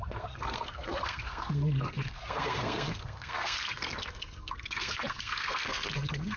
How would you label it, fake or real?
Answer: fake